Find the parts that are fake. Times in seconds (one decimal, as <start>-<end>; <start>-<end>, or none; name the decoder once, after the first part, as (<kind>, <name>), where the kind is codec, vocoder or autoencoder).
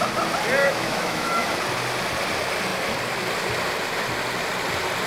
0.6-1.5 (autoencoder, DAC-VAE)